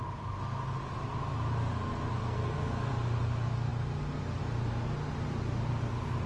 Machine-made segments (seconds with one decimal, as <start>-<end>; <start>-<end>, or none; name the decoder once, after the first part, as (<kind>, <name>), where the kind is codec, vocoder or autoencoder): 2.2-2.9 (codec, SNAC)